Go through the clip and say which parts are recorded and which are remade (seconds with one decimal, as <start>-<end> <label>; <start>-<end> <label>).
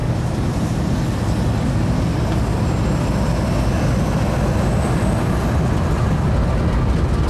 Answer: 0.0-7.3 recorded